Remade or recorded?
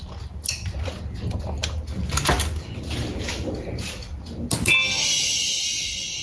recorded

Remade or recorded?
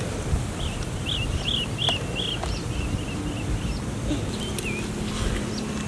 recorded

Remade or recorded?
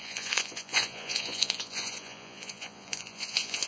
remade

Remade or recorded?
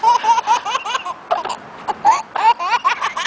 recorded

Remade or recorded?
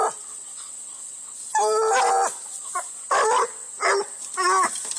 recorded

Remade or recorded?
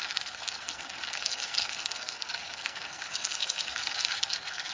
remade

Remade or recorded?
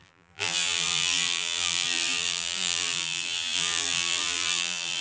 remade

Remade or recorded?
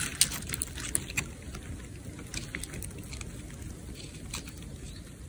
recorded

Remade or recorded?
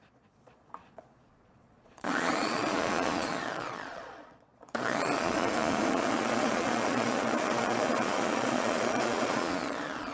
remade